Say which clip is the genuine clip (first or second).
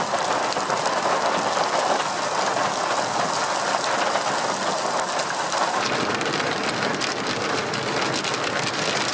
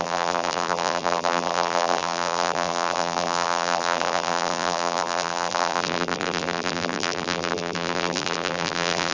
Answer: first